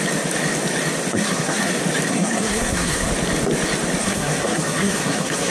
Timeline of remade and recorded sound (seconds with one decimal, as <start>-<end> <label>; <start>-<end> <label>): 0.0-1.1 recorded; 1.1-1.7 remade; 1.7-2.1 recorded; 2.1-3.1 remade; 3.1-4.0 recorded; 4.0-5.5 remade